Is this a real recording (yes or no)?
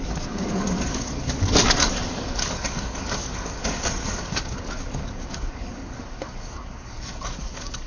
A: no